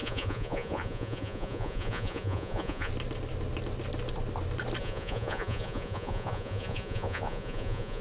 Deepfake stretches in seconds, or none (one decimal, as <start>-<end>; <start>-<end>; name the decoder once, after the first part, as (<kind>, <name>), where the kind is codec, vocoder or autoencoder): 0.0-2.9 (vocoder, Vocos); 4.8-8.0